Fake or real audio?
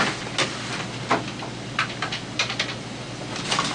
real